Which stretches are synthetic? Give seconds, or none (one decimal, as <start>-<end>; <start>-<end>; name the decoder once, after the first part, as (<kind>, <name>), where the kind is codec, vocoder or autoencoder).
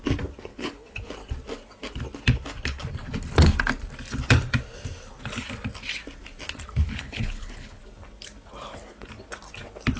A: 0.5-1.1 (codec, HILCodec); 6.9-7.8